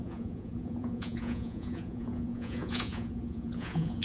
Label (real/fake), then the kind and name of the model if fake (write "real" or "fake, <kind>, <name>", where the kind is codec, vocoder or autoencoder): fake, vocoder, Vocos